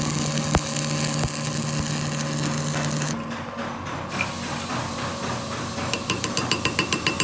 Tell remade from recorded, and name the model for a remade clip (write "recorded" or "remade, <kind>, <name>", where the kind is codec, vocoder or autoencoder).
recorded